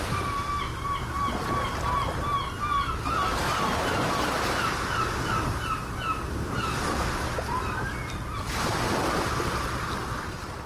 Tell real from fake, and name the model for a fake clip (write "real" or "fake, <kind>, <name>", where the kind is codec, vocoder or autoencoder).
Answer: real